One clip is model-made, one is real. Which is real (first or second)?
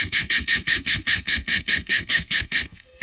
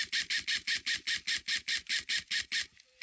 second